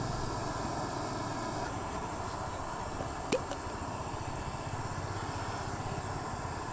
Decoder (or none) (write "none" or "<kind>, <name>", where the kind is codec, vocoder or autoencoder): none